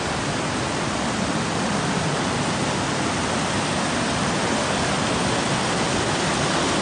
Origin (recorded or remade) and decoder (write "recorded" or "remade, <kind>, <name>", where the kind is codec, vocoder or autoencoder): recorded